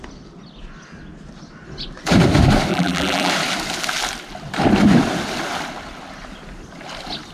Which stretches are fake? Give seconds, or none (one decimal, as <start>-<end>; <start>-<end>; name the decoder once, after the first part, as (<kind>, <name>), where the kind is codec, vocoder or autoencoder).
2.7-3.3 (vocoder, BigVGAN v2)